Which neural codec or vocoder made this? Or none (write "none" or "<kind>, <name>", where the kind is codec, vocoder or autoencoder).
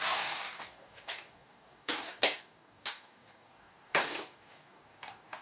codec, DAC